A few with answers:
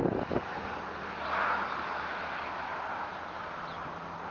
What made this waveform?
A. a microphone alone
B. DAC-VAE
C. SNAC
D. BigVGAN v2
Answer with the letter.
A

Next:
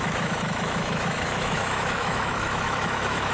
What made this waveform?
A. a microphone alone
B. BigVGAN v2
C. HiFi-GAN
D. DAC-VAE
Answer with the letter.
D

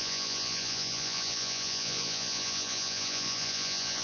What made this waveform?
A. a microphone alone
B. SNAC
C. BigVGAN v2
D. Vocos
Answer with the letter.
D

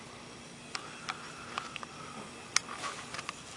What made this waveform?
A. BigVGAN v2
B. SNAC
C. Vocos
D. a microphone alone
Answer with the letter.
D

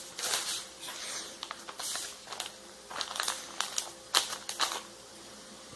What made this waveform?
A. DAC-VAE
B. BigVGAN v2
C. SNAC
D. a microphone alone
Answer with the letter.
D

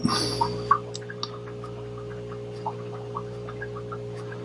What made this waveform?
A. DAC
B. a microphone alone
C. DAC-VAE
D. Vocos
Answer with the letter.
B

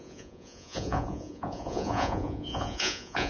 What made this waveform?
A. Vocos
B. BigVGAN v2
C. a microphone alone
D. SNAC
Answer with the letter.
A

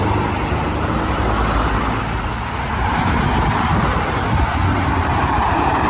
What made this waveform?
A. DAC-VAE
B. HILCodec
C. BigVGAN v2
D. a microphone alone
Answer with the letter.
C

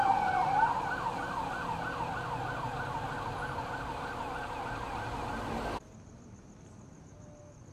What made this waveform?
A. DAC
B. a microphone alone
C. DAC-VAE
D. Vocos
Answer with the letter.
B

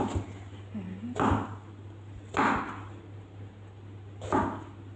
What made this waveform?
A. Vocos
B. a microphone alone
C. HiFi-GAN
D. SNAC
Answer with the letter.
B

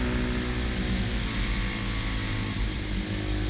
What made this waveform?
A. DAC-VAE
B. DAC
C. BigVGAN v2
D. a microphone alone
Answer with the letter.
D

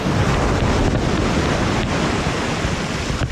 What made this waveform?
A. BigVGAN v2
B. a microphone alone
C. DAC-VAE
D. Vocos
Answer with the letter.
B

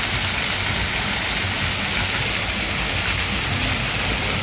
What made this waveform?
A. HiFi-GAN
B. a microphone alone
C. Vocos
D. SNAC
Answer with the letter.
B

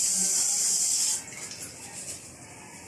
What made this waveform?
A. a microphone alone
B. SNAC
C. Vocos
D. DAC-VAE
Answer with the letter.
A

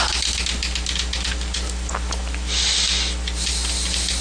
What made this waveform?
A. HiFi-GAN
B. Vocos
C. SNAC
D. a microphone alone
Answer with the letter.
D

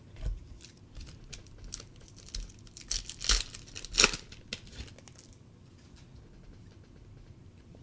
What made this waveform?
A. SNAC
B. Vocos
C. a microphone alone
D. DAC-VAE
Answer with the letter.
C